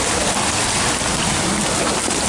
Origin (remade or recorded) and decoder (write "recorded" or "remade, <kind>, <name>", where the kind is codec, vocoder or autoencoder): recorded